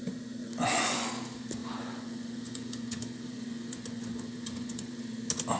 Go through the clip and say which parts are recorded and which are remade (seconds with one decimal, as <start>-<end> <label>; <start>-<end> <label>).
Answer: 0.0-0.4 recorded; 0.4-1.1 remade; 1.1-1.6 recorded; 1.6-5.0 remade; 5.0-5.6 recorded